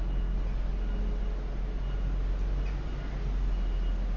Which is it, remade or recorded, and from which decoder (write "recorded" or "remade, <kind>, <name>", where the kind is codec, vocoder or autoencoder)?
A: recorded